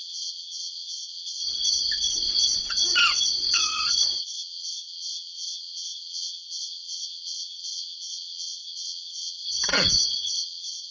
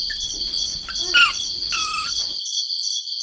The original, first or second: second